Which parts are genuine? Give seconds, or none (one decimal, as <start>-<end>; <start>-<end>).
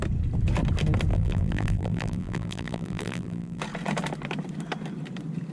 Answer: 0.0-1.1; 3.6-5.5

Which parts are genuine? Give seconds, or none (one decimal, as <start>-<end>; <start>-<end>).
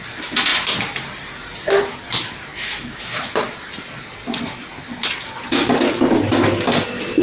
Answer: 0.0-2.5; 3.2-7.2